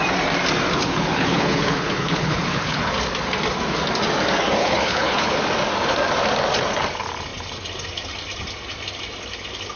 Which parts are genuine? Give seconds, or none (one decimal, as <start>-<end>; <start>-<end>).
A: 0.0-0.8; 2.9-4.6; 5.4-9.8